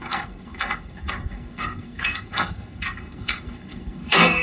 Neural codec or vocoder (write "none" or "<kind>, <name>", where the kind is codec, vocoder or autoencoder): codec, SNAC